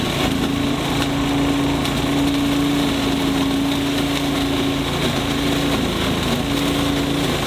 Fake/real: real